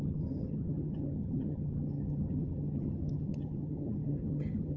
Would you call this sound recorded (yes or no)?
no